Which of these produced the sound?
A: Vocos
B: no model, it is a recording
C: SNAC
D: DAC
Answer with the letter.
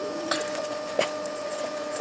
A